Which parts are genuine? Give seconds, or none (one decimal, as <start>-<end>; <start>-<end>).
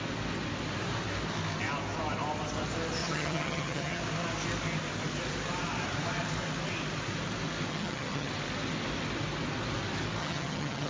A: 0.0-3.0; 4.0-7.7; 8.3-10.2